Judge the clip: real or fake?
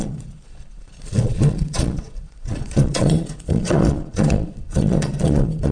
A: fake